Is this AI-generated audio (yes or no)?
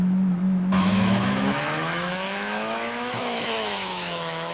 yes